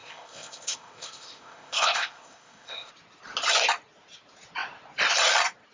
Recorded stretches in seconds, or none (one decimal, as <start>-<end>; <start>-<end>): 2.9-5.7